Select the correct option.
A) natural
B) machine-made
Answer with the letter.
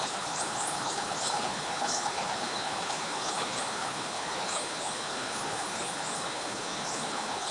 B